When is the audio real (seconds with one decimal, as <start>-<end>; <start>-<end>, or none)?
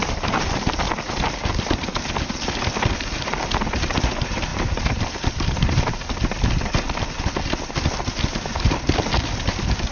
0.0-4.5; 5.0-9.9